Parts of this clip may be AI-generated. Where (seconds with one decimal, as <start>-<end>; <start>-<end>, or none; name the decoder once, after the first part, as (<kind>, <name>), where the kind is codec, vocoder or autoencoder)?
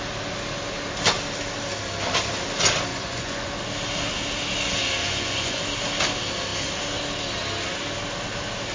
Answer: 2.9-3.5 (vocoder, Vocos); 5.0-5.6